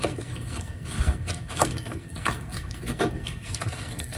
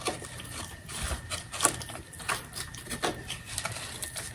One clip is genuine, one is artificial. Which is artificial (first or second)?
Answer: first